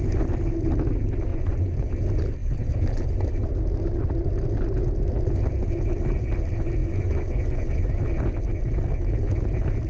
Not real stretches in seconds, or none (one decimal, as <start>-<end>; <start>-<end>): 1.3-1.9; 6.8-8.0